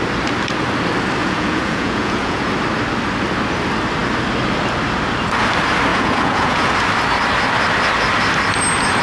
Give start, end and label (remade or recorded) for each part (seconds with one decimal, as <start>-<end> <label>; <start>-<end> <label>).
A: 0.0-1.2 recorded; 1.2-2.5 remade; 2.5-5.9 recorded; 5.9-6.7 remade; 6.7-9.0 recorded